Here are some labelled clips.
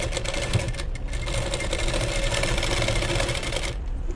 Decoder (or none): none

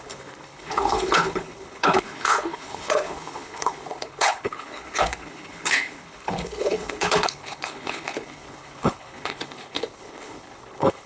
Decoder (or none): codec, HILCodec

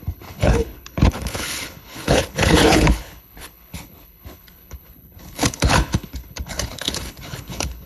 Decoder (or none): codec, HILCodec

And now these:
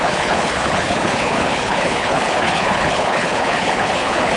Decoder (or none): codec, HILCodec